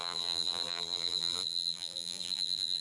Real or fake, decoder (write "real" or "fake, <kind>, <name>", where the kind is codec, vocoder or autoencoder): fake, vocoder, BigVGAN v2